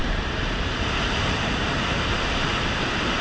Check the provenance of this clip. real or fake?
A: fake